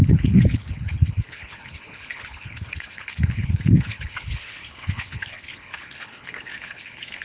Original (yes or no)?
no